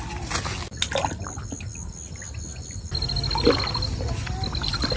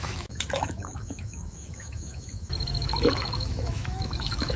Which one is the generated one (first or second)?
second